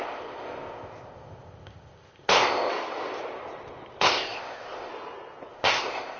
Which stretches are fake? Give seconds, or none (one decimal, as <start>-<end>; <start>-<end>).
0.0-2.7; 4.0-4.9; 5.5-6.2